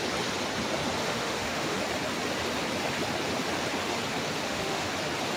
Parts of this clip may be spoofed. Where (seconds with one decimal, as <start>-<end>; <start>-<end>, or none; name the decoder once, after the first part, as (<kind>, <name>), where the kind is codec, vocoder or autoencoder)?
1.0-1.8 (autoencoder, DAC-VAE); 4.4-4.9